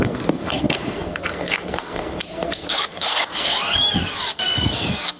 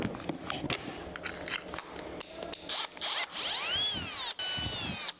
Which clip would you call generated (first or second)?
first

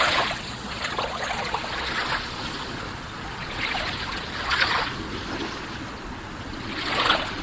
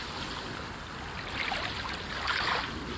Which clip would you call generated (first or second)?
first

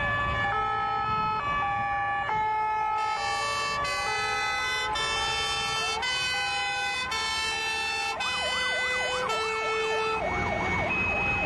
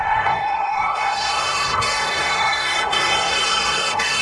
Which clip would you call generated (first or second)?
second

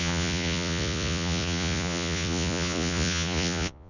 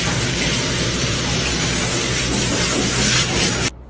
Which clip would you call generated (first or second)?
first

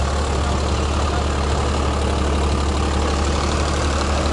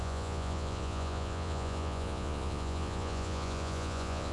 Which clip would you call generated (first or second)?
second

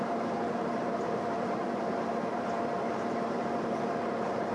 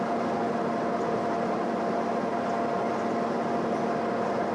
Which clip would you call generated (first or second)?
first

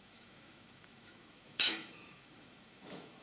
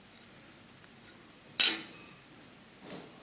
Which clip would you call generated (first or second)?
first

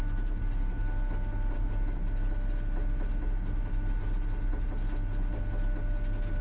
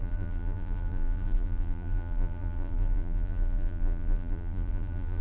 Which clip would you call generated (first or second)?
second